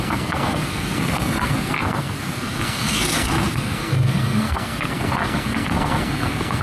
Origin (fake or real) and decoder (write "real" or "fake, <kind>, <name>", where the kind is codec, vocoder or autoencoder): fake, codec, SNAC